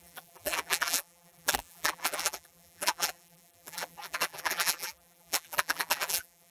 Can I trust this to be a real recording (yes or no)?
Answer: no